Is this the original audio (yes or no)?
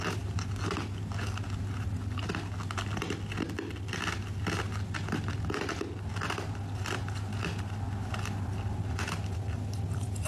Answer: yes